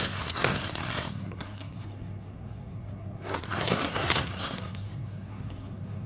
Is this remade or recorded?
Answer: remade